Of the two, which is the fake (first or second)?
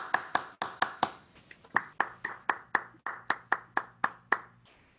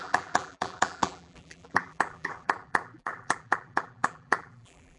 second